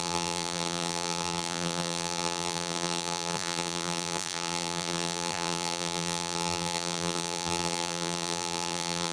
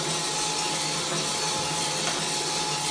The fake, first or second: first